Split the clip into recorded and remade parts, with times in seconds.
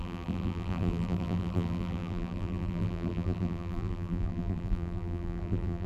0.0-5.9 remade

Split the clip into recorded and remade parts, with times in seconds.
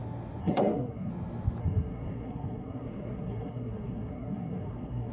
0.0-0.4 recorded; 0.4-1.1 remade; 1.1-1.6 recorded; 1.6-5.1 remade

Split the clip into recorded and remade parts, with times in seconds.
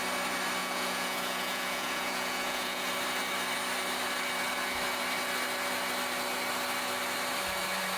0.0-0.6 recorded; 0.6-2.9 remade; 2.9-8.0 recorded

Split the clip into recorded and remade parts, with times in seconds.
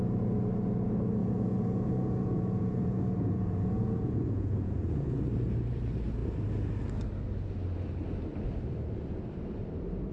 0.0-1.2 recorded; 1.2-5.2 remade; 5.2-10.1 recorded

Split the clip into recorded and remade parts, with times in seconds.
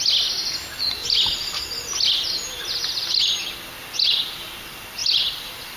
0.0-5.0 recorded; 5.0-5.8 remade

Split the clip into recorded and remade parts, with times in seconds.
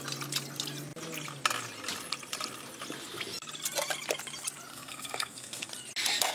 0.0-4.7 recorded; 4.7-5.7 remade; 5.7-6.3 recorded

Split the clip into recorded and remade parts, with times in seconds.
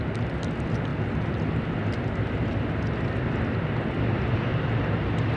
0.0-4.5 recorded; 4.5-5.4 remade